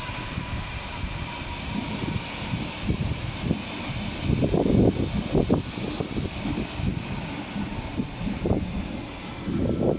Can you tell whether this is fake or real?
real